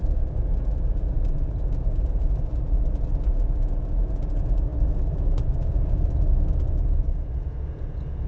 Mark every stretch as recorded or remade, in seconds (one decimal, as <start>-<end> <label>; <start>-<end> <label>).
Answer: 0.0-4.7 remade; 4.7-5.3 recorded; 5.3-8.3 remade